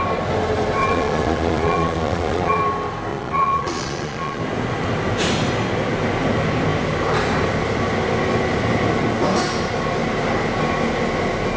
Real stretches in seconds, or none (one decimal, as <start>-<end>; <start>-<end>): 0.0-0.8; 2.6-3.1; 4.4-11.6